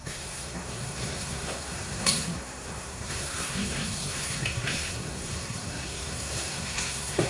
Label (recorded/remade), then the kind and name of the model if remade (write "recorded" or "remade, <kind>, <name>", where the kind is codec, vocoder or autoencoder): remade, codec, SNAC